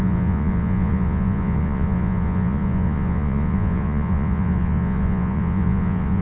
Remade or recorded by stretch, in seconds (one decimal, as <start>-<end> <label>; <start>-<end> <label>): 0.0-6.2 remade